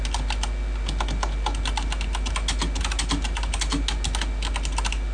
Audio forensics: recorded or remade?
recorded